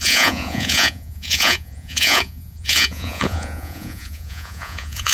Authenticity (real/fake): fake